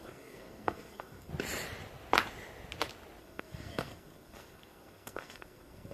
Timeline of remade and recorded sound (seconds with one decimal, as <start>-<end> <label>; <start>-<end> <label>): 0.0-1.3 remade; 1.3-3.2 recorded; 3.2-5.9 remade